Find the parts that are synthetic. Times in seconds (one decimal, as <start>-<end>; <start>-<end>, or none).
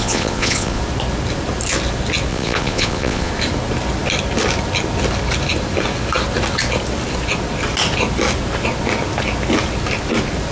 0.0-0.8; 2.3-3.3